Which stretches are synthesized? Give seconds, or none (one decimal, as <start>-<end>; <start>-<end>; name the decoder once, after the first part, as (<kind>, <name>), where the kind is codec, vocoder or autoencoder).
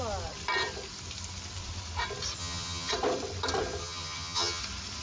2.4-2.9 (vocoder, HiFi-GAN); 3.8-4.6